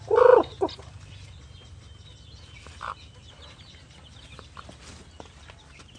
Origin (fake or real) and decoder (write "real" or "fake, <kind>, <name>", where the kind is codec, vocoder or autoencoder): real